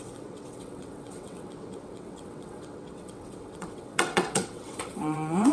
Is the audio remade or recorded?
remade